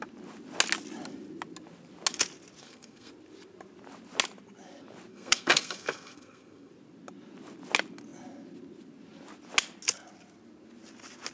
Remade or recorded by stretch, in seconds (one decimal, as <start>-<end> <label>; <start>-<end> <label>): 0.0-2.6 recorded; 2.6-3.1 remade; 3.1-5.1 recorded; 5.1-6.7 remade; 6.7-11.3 recorded